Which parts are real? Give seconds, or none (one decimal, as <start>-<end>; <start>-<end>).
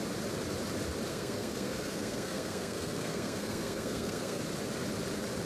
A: 0.0-1.1; 4.4-5.5